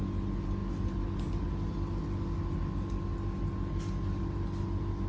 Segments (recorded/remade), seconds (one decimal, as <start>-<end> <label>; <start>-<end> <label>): 0.0-5.1 recorded